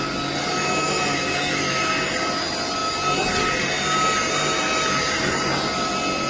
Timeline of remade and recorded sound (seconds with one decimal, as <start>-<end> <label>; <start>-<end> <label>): 0.0-0.5 recorded; 0.5-1.9 remade; 1.9-6.3 recorded